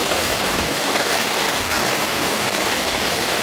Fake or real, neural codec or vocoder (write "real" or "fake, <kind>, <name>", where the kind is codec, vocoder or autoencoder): fake, codec, DAC